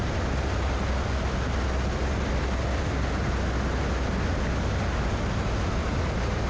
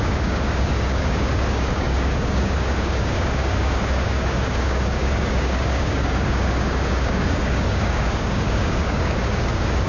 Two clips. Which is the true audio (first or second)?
first